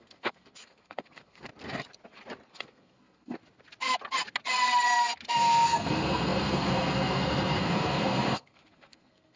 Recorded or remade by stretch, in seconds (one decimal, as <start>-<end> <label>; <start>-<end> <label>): 0.0-1.5 remade; 1.5-2.5 recorded; 2.5-3.4 remade; 3.4-5.3 recorded; 5.3-9.4 remade